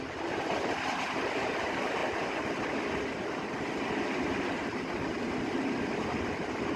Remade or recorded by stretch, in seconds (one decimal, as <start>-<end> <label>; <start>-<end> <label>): 0.0-6.8 recorded